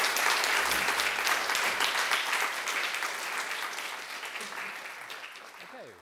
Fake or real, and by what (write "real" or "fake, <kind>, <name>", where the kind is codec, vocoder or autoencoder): real